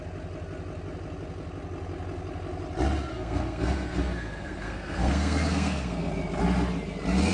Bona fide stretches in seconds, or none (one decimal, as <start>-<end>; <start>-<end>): 0.0-3.1; 6.1-7.3